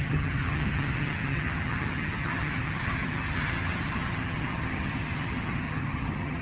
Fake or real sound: fake